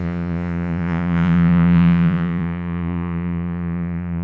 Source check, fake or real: fake